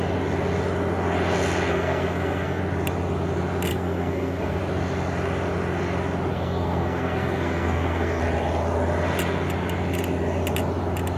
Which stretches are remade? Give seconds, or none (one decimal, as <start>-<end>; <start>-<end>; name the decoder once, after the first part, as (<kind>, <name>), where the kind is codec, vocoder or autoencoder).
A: 1.7-2.6 (codec, SNAC); 3.7-4.6; 6.3-8.2

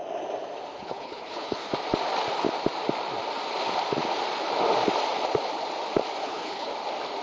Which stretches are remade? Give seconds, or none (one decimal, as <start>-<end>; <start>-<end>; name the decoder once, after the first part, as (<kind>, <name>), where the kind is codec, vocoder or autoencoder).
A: 0.7-1.7 (codec, HILCodec); 6.2-6.7

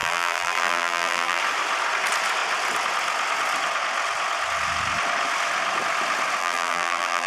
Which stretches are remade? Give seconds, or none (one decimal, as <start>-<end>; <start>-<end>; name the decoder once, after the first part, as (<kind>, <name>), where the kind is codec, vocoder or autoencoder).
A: 0.0-1.4 (vocoder, BigVGAN v2); 6.4-7.3

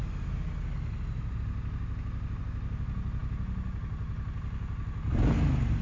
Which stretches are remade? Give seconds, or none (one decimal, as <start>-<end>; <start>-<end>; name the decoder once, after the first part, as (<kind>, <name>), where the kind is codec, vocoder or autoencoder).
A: none

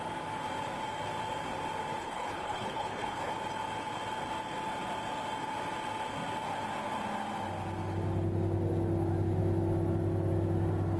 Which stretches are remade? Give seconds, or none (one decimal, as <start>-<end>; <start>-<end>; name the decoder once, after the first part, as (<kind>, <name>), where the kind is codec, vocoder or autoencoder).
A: 2.0-3.3 (codec, HILCodec)

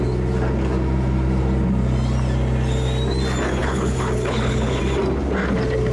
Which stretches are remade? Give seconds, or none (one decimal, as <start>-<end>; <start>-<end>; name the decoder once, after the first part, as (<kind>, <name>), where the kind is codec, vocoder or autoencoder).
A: 3.6-4.8 (codec, HILCodec)

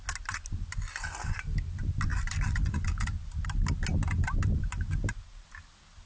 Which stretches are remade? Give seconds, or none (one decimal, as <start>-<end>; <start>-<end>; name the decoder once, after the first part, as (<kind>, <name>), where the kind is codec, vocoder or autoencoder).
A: none